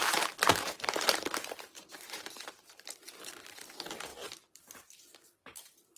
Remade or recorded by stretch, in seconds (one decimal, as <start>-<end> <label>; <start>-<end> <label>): 0.0-3.6 remade; 3.6-4.1 recorded; 4.1-6.0 remade